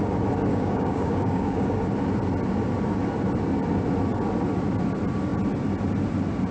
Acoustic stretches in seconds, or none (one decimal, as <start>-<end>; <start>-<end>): 0.0-0.5; 1.8-6.5